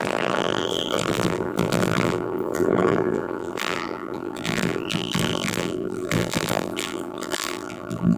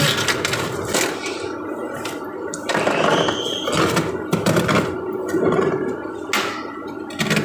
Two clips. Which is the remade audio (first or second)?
first